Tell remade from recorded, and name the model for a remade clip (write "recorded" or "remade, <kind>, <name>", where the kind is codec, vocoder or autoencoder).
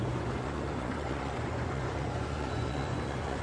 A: remade, vocoder, Vocos